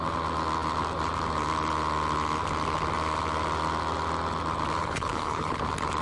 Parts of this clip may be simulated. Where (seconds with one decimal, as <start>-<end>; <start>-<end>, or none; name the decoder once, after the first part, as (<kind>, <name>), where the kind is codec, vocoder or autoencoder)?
4.8-5.6 (codec, HILCodec)

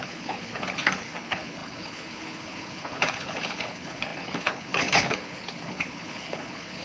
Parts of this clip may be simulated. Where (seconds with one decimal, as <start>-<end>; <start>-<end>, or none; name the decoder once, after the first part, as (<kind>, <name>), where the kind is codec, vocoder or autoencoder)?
0.0-6.8 (codec, HILCodec)

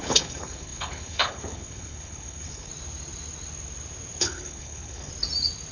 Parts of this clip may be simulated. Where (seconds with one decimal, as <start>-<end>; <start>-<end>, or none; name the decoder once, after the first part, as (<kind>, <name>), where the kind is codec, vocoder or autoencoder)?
0.0-2.7 (codec, HILCodec); 4.2-5.1

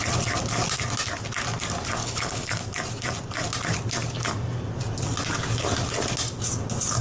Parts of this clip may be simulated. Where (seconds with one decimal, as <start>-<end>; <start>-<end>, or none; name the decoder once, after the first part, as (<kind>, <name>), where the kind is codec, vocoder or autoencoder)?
2.0-2.6 (codec, HILCodec)

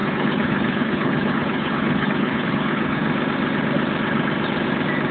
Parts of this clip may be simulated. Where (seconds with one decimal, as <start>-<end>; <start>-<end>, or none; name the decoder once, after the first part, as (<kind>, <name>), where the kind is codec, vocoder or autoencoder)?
0.0-3.0 (codec, HILCodec)

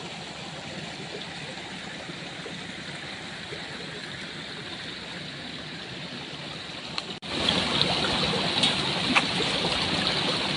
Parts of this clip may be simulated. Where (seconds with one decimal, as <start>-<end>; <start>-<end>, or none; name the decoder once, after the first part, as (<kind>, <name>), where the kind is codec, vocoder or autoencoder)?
none

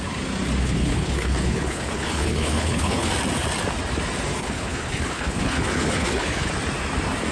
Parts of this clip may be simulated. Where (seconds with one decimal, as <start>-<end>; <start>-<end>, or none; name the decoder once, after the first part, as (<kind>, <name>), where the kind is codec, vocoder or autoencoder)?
0.6-3.1 (codec, HILCodec); 4.4-6.5